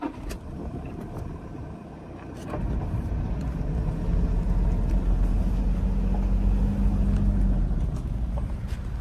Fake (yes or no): no